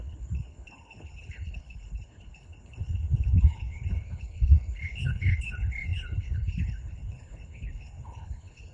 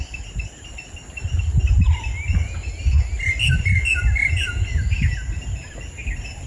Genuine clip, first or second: second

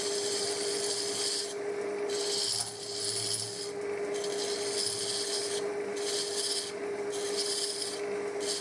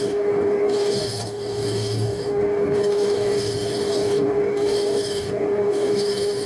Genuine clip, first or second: first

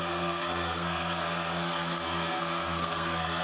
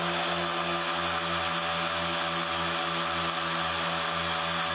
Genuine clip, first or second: second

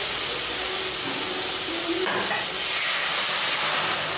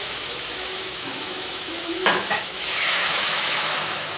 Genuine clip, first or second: first